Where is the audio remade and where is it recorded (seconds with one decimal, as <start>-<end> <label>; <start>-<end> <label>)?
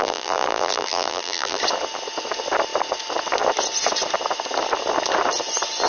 0.0-1.6 remade; 1.6-5.9 recorded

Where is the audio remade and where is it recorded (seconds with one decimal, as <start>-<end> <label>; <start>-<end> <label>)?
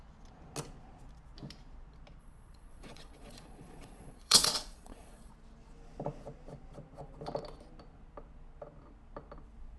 0.0-2.2 recorded; 2.2-5.3 remade; 5.3-9.8 recorded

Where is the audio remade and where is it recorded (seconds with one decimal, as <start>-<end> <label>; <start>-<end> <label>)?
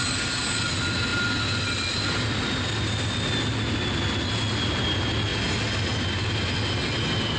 0.0-7.4 recorded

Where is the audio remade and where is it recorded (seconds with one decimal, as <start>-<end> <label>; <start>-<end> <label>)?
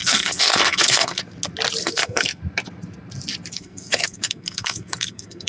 0.0-1.2 remade; 1.2-1.8 recorded; 1.8-2.4 remade; 2.4-3.5 recorded; 3.5-5.5 remade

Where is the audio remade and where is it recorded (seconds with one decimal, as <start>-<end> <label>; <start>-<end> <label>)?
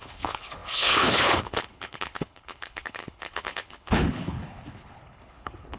0.0-5.8 remade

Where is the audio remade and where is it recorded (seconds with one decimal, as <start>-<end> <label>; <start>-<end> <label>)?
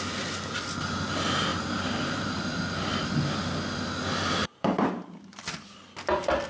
0.0-1.5 recorded; 1.5-2.4 remade; 2.4-4.4 recorded; 4.4-5.4 remade; 5.4-6.5 recorded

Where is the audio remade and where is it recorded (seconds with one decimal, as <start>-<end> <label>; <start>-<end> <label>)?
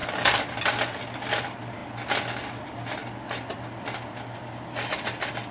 0.0-5.5 recorded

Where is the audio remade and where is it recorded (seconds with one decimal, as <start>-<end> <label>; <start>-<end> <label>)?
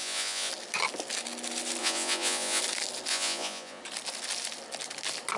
0.0-0.5 remade; 0.5-1.8 recorded; 1.8-2.6 remade; 2.6-3.1 recorded; 3.1-3.8 remade; 3.8-5.4 recorded